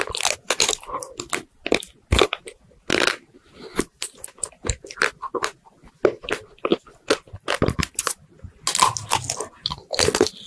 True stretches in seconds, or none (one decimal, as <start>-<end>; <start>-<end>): 0.0-10.5